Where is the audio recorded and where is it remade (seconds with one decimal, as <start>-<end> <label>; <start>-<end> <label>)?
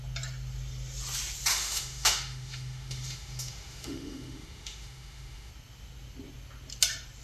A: 0.0-1.5 recorded; 1.5-5.5 remade; 5.5-7.2 recorded